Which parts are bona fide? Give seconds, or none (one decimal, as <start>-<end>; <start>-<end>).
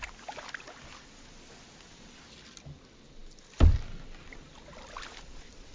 0.0-5.7